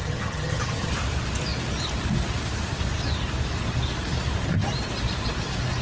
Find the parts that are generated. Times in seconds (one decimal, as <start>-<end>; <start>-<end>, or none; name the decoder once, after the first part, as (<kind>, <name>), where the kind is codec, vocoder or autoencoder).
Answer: 0.0-0.9 (vocoder, HiFi-GAN)